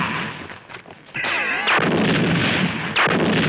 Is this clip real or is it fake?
real